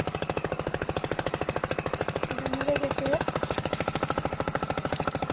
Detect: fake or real fake